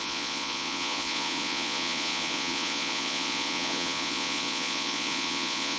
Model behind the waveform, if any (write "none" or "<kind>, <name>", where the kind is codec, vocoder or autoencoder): vocoder, Vocos